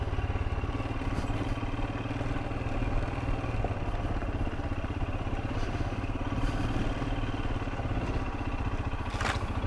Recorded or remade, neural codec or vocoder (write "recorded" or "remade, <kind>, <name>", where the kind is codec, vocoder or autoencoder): recorded